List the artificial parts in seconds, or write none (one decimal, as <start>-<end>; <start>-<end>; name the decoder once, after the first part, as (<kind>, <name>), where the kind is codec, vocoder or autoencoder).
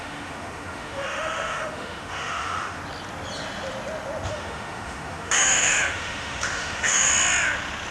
0.0-2.8 (autoencoder, DAC-VAE); 4.3-7.1